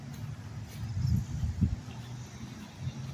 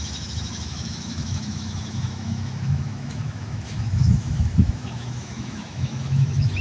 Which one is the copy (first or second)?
second